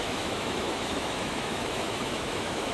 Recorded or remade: remade